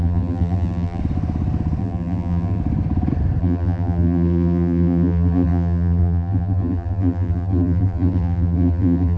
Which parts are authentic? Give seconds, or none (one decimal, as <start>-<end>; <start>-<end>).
1.0-1.8; 2.6-3.4